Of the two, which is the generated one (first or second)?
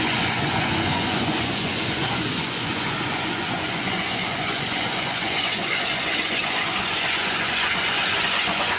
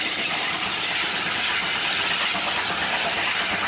first